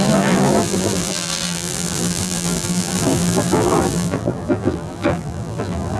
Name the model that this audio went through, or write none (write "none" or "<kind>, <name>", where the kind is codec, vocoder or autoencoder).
vocoder, BigVGAN v2